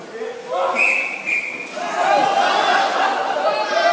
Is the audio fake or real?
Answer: real